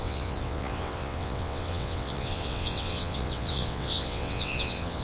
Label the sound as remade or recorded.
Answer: remade